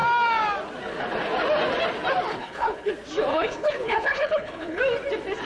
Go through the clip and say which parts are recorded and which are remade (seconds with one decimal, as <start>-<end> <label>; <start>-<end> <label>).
0.0-2.3 recorded; 2.3-2.9 remade; 2.9-3.3 recorded; 3.3-4.8 remade; 4.8-5.4 recorded